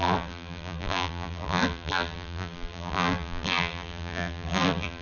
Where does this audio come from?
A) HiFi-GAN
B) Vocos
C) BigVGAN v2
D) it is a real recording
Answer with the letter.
C